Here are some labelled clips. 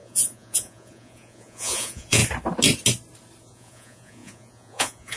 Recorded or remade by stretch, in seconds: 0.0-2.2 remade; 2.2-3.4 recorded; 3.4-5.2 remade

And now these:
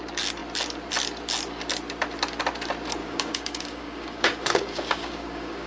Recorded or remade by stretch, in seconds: 0.0-3.0 recorded; 3.0-5.7 remade

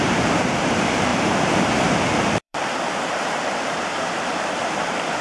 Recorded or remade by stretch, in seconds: 0.0-1.1 remade; 1.1-2.2 recorded; 2.2-5.2 remade

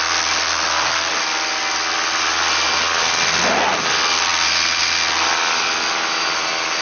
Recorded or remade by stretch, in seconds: 0.0-6.8 recorded